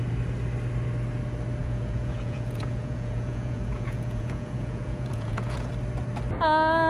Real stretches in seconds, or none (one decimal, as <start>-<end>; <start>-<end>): 0.0-1.6; 5.7-6.9

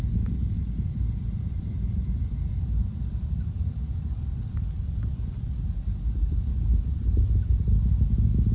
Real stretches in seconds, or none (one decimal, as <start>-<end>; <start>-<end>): 0.0-0.6; 5.5-8.5

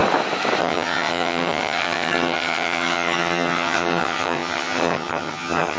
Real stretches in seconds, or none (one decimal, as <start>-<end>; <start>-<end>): 0.0-0.6

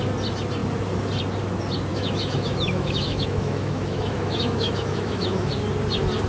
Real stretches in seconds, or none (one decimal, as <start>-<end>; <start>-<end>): 0.0-1.9; 5.5-6.3

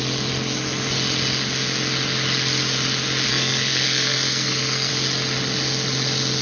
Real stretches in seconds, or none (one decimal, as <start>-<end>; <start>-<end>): 0.0-3.3; 4.9-6.4